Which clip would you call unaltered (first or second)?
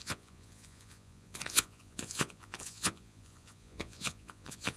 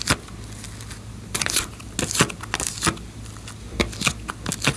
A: second